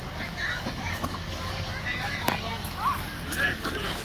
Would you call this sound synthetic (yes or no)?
yes